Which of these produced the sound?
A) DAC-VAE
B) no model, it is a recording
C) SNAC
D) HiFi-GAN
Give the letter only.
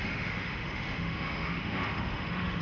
A